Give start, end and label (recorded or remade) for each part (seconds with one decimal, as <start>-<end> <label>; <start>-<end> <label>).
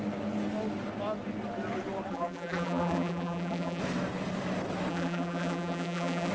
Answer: 0.0-2.1 recorded; 2.1-3.8 remade; 3.8-4.9 recorded; 4.9-6.3 remade